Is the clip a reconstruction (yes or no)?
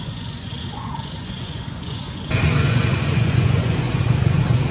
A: yes